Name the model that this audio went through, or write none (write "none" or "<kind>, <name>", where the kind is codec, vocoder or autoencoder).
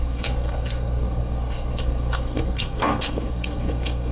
codec, SNAC